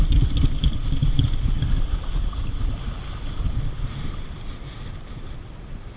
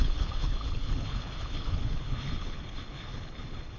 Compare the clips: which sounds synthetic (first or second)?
second